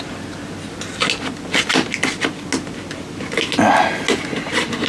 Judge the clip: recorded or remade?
recorded